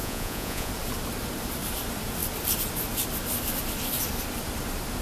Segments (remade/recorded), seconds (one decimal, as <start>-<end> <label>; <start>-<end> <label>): 0.0-0.7 remade; 0.7-5.0 recorded